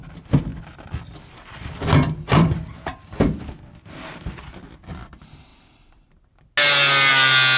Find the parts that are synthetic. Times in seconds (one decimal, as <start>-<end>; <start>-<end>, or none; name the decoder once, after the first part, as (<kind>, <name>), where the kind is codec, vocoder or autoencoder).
none